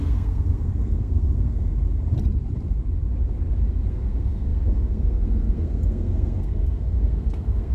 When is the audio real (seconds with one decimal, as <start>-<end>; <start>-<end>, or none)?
1.7-3.9